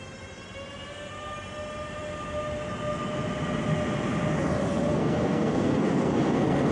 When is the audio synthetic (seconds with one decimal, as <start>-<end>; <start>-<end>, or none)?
4.9-6.7